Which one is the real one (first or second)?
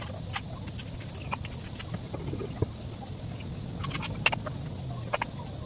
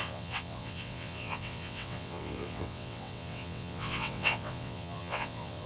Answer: first